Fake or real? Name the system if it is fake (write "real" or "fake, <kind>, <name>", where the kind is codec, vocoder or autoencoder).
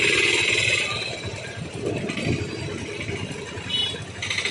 real